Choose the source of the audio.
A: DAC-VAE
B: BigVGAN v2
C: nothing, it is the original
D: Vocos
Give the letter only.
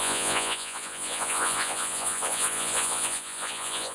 D